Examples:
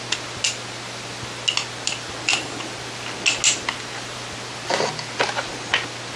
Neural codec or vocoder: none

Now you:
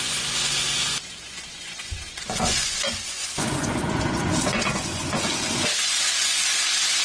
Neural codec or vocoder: vocoder, Vocos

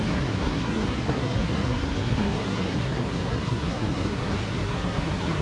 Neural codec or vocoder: codec, SNAC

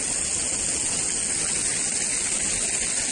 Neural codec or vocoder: none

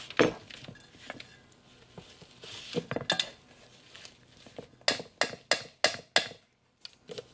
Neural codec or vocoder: none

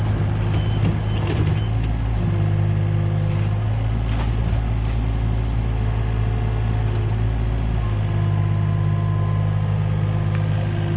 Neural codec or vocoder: none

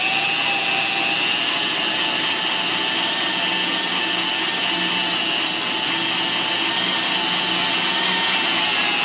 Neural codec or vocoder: none